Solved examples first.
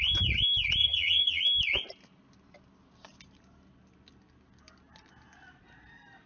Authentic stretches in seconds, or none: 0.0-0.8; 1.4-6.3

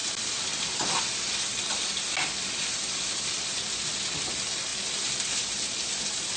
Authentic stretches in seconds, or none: 0.0-6.4

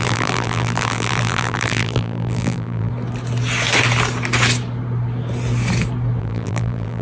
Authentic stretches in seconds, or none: 2.9-6.2

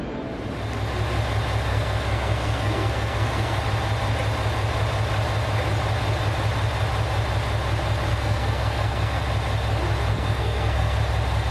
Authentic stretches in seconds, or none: 0.0-1.7; 3.6-8.1; 9.2-10.1; 11.0-11.5

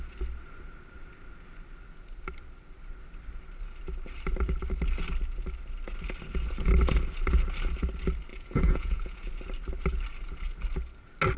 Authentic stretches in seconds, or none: 0.0-8.3; 9.3-11.4

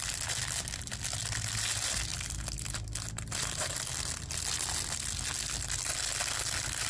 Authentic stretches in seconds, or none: 0.0-6.9